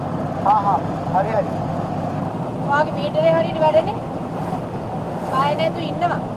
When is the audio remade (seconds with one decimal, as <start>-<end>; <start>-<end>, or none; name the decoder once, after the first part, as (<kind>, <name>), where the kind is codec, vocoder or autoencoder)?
none